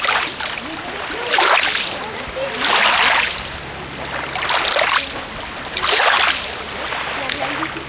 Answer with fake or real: real